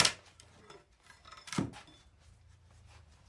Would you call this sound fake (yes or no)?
no